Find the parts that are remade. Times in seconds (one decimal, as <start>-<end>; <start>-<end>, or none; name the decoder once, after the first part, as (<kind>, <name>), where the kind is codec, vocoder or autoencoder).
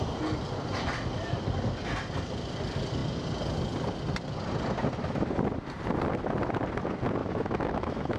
7.2-8.2 (autoencoder, DAC-VAE)